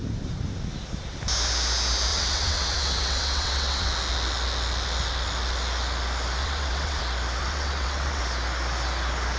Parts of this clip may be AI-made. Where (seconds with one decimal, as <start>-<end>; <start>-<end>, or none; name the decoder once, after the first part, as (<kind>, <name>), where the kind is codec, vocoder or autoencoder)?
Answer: 2.1-3.9 (vocoder, WaveNeXt); 6.4-7.0; 7.4-8.2